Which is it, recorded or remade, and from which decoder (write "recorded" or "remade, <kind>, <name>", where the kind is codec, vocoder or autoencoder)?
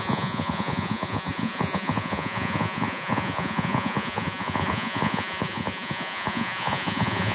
remade, vocoder, Vocos